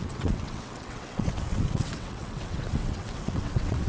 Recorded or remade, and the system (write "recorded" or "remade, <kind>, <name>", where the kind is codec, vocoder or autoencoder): remade, vocoder, WaveNeXt